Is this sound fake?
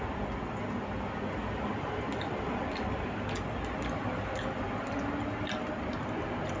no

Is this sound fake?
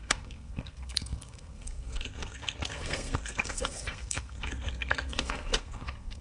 yes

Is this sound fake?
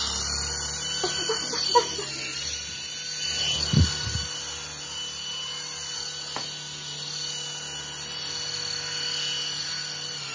no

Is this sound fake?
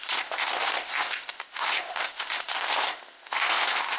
yes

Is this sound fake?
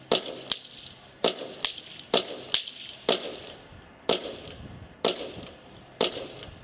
no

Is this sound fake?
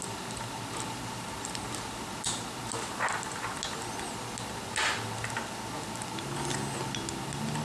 no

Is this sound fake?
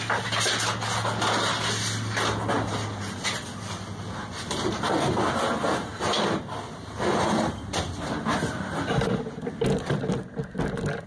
no